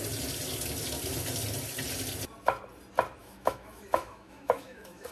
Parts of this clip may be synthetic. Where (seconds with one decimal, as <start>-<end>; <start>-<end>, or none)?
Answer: 3.2-5.1